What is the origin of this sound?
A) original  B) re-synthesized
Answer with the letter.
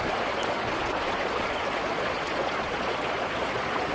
B